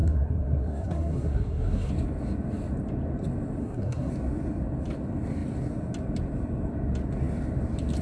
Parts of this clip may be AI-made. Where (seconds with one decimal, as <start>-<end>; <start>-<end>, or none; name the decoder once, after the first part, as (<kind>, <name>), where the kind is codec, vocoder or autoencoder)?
0.0-1.9 (codec, SNAC); 3.6-4.1